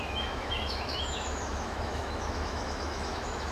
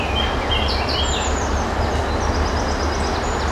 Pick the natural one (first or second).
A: second